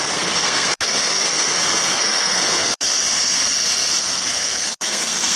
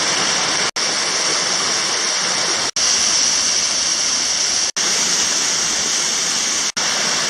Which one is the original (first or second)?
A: second